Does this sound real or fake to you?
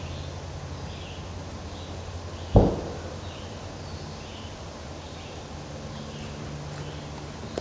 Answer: real